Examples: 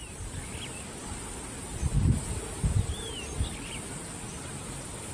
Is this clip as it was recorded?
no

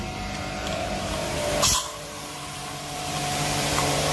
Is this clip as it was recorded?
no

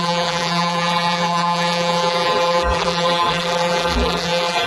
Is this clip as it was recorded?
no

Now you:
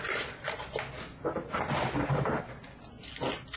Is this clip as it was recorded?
yes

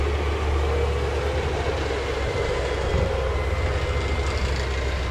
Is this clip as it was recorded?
yes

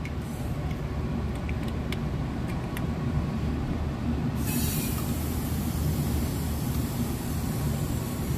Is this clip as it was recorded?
no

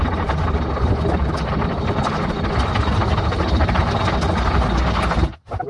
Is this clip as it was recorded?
yes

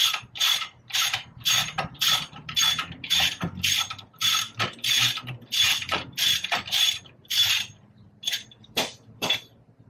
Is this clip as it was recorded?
no